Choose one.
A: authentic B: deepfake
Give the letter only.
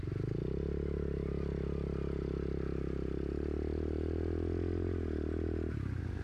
A